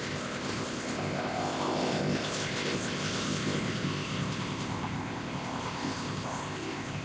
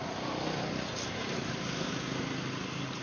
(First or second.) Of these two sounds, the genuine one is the second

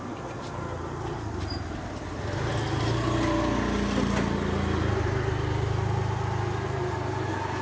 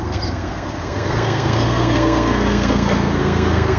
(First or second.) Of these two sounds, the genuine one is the first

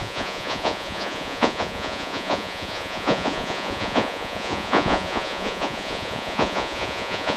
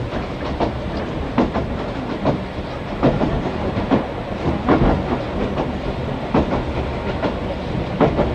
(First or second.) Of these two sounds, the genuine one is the second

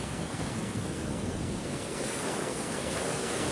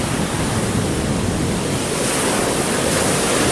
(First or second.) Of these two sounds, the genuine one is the second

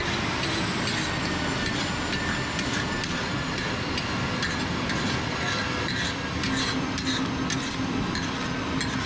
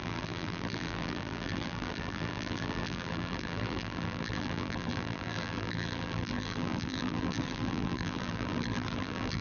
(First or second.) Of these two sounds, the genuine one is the first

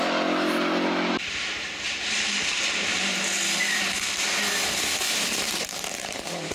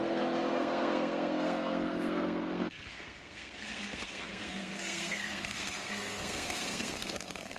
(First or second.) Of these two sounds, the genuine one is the first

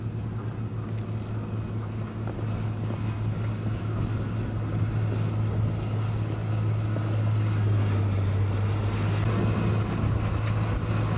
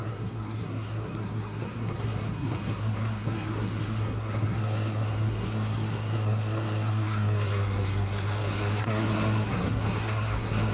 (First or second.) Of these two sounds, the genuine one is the first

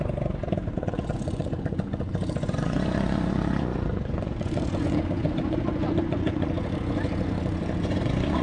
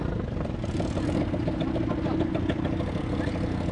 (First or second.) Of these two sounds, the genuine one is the second